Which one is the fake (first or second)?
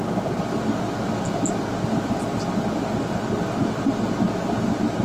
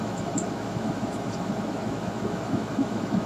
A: second